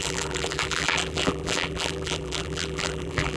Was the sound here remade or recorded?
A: remade